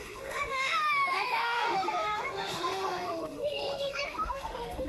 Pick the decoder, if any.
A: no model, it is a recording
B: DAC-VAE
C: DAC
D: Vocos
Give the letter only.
B